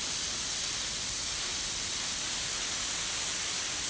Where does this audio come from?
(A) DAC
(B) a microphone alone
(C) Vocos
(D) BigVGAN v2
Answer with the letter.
B